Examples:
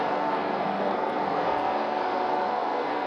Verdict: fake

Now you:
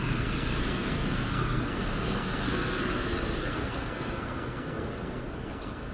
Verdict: fake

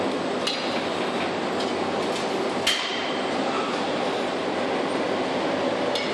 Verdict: real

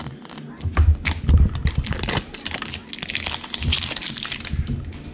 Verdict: real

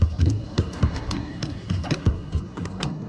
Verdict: fake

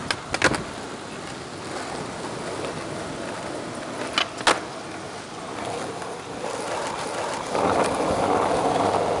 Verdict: real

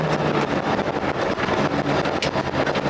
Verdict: real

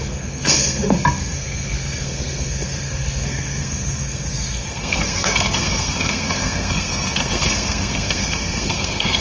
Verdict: fake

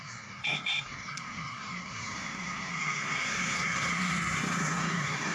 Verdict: fake